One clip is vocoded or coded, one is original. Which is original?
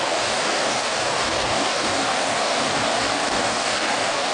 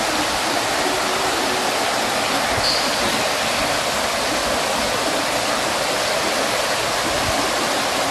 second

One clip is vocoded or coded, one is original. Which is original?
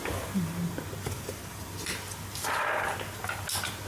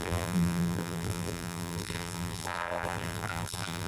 first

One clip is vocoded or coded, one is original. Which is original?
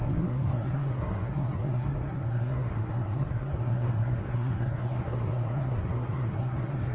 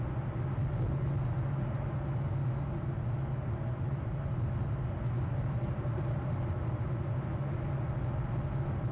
second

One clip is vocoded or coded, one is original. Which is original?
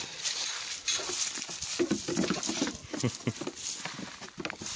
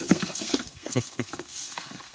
first